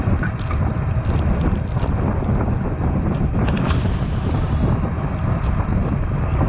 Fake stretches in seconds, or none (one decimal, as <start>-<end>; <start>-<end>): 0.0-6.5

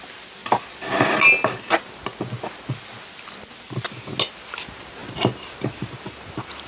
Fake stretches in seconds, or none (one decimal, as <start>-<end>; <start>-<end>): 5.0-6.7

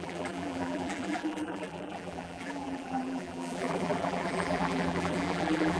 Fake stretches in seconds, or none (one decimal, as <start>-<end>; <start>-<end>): 0.0-5.8

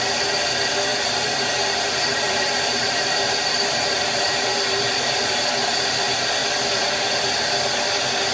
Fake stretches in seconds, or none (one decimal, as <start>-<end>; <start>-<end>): 0.9-5.5; 6.4-7.4

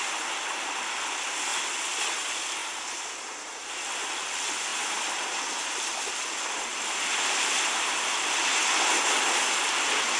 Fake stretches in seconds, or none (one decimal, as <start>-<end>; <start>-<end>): 2.6-3.1; 4.7-5.4; 6.7-8.3

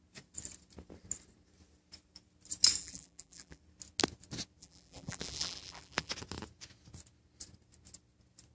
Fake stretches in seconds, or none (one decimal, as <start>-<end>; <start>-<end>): 2.8-3.6; 4.6-6.1